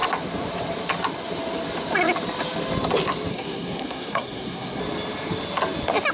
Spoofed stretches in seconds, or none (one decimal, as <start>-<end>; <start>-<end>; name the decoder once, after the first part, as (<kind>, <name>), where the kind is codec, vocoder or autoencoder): 3.3-4.8 (codec, SNAC)